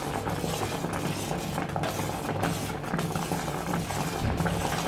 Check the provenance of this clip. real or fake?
real